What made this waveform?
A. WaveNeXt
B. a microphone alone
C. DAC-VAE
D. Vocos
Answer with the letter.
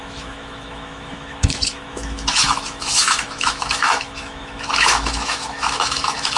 C